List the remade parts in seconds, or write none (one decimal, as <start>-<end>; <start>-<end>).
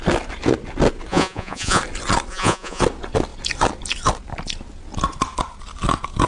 1.1-1.8; 2.3-2.8